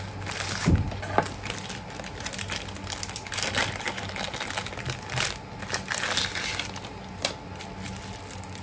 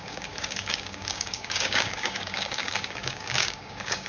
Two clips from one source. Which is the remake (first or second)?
second